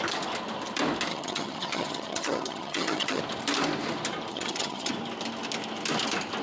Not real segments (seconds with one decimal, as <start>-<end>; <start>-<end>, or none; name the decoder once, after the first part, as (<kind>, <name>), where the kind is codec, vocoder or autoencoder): 1.1-3.2 (vocoder, HiFi-GAN); 4.3-4.9